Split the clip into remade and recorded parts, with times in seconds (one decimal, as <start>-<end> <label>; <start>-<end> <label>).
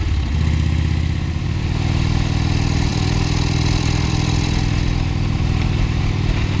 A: 0.0-2.9 recorded; 2.9-6.0 remade; 6.0-6.6 recorded